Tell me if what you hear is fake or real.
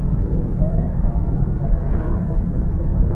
fake